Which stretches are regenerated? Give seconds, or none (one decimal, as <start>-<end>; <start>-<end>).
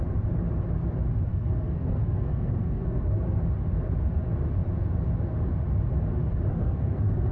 1.3-3.4; 6.5-7.3